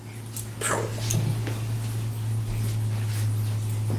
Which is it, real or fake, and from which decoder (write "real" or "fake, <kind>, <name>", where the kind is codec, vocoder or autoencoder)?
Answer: real